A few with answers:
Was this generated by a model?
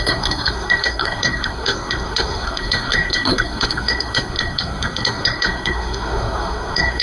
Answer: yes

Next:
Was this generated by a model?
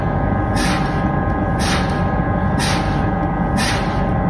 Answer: no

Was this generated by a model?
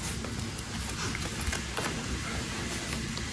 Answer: no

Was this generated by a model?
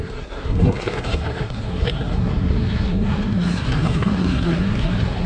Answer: yes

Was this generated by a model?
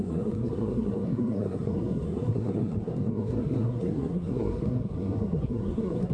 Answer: yes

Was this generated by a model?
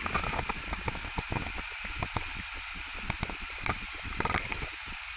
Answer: no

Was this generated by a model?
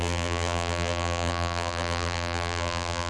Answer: yes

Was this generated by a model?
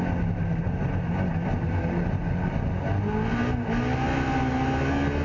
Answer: no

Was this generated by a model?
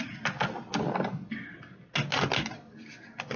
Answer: no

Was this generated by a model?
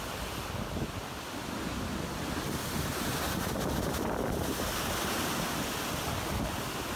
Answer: no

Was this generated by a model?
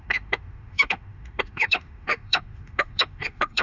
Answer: yes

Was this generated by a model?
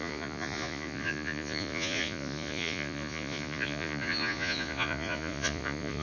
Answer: yes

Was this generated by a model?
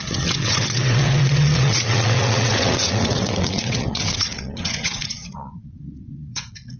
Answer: yes